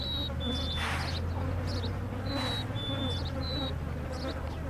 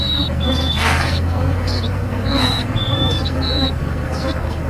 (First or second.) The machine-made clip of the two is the second